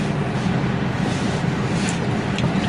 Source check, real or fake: real